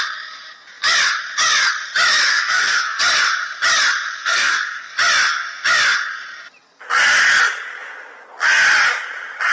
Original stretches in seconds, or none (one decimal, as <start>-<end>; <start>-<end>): 0.0-2.3; 3.0-4.2; 4.9-9.5